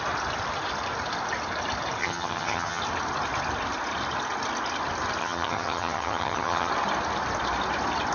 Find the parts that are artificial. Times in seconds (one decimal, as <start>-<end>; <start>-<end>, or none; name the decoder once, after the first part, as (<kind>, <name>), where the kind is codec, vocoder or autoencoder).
2.0-2.8 (vocoder, HiFi-GAN); 5.2-6.7